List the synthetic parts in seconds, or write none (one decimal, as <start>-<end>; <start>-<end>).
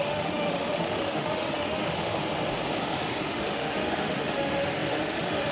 0.0-2.2; 3.3-5.5